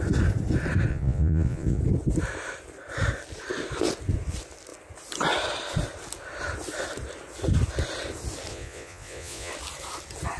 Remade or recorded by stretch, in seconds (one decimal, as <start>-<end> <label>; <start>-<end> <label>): 0.0-0.9 recorded; 0.9-1.8 remade; 1.8-8.5 recorded; 8.5-9.5 remade; 9.5-10.4 recorded